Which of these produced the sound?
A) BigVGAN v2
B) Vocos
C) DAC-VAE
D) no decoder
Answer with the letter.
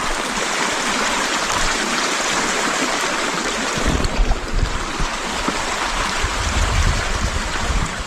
A